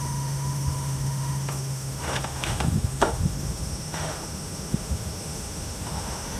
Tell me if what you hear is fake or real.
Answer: fake